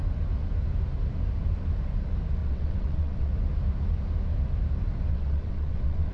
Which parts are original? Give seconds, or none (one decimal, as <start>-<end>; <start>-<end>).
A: 0.0-2.4; 3.3-5.1